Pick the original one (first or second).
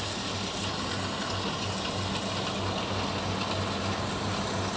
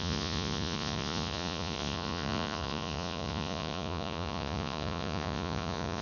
first